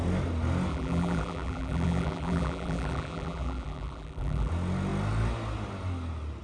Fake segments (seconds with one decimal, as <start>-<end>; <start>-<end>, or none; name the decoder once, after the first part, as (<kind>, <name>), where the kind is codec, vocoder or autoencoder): 0.7-4.5 (vocoder, BigVGAN v2)